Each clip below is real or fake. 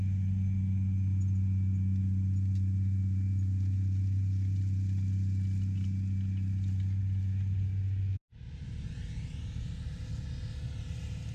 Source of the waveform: real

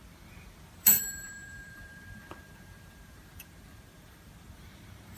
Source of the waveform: fake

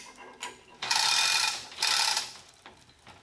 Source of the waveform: real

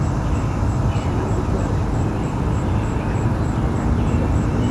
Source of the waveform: fake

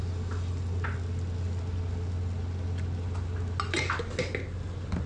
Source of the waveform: real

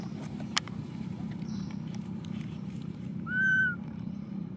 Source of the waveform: fake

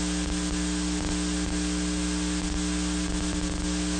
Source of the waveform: real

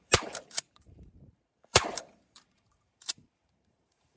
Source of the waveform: fake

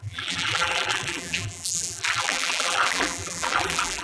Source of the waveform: fake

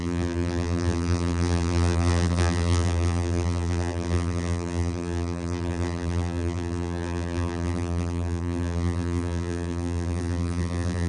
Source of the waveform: fake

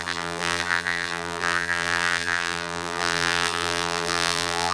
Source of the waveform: fake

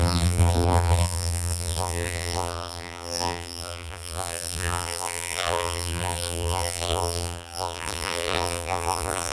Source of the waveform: fake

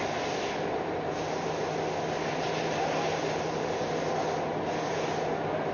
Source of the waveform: real